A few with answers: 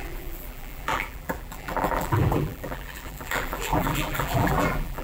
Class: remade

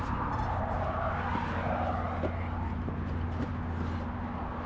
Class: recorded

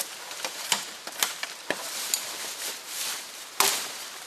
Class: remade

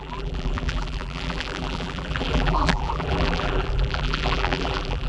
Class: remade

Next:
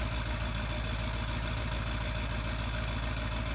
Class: recorded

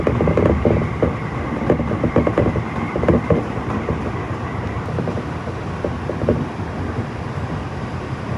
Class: remade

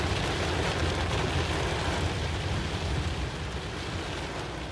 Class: recorded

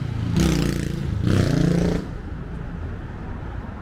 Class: recorded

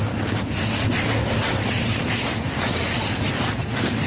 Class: recorded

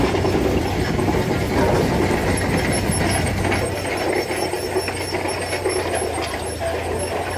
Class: recorded